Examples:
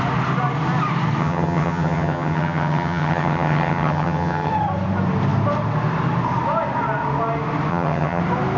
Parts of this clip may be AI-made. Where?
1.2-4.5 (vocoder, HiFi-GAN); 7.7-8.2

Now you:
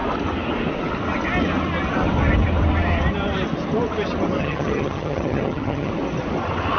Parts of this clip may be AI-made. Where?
4.4-5.9 (vocoder, HiFi-GAN)

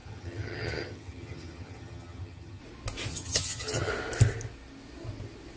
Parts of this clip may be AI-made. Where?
0.0-2.6 (vocoder, HiFi-GAN); 3.1-3.9